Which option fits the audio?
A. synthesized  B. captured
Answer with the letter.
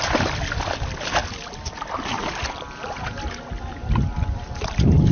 B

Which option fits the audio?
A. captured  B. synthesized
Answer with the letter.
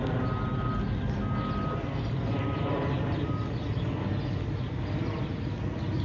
A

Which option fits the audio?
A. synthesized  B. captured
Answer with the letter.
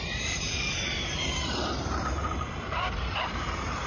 A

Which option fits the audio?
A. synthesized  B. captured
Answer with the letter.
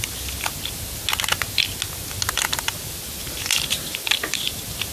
B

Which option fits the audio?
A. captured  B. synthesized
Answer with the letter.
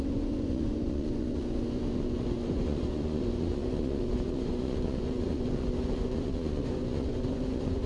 B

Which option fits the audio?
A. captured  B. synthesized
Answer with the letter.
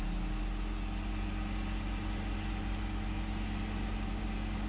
A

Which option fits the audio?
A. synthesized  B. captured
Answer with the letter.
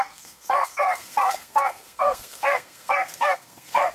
A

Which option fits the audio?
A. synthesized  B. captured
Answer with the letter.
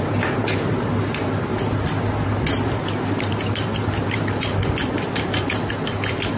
B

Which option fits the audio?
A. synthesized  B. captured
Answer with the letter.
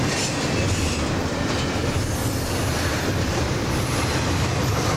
B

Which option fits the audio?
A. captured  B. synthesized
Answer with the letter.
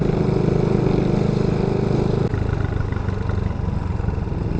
A